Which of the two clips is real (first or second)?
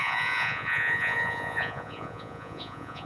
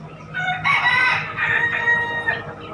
second